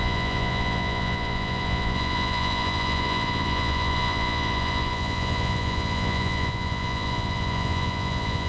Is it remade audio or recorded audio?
remade